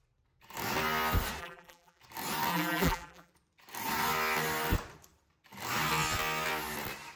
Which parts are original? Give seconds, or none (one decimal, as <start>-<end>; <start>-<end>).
0.0-1.4; 2.0-2.5; 3.3-7.2